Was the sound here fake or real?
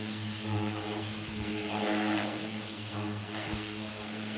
fake